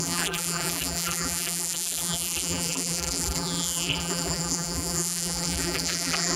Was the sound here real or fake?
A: fake